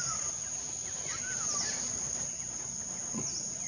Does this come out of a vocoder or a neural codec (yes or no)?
no